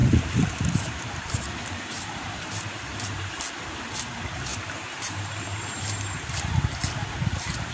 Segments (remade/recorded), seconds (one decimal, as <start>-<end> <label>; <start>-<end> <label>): 0.0-3.3 remade; 3.3-4.5 recorded; 4.5-6.5 remade; 6.5-7.7 recorded